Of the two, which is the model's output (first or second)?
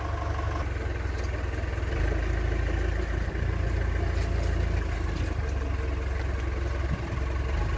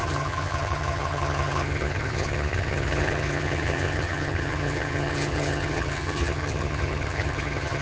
second